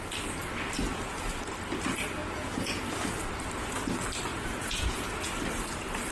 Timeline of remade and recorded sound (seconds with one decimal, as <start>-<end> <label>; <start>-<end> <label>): 0.0-2.2 recorded; 2.2-2.8 remade; 2.8-4.3 recorded; 4.3-5.3 remade; 5.3-6.1 recorded

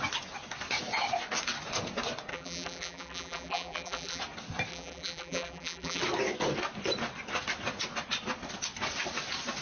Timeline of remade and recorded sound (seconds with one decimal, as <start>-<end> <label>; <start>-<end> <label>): 0.0-2.3 recorded; 2.3-4.2 remade; 4.2-4.7 recorded; 4.7-6.0 remade; 6.0-9.6 recorded

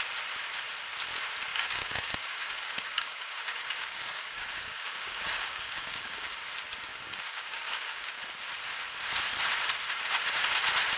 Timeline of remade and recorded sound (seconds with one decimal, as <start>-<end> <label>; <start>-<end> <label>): 0.0-1.5 recorded; 1.5-6.4 remade; 6.4-6.9 recorded; 6.9-8.2 remade; 8.2-11.0 recorded

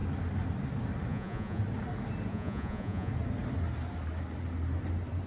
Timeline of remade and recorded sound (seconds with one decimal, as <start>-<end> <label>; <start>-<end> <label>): 0.0-1.1 recorded; 1.1-1.6 remade; 1.6-2.3 recorded; 2.3-3.1 remade; 3.1-5.3 recorded

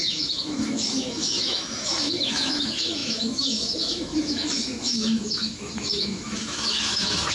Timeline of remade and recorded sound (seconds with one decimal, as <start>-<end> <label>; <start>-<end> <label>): 0.0-7.3 remade

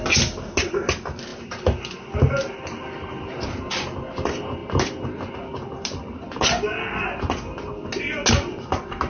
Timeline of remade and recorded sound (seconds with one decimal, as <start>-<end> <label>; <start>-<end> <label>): 0.0-9.1 recorded